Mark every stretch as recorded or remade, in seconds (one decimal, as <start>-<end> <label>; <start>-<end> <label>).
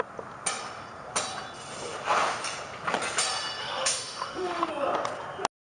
0.0-3.6 recorded; 3.6-4.7 remade; 4.7-5.6 recorded